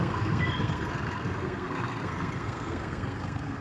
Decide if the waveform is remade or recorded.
remade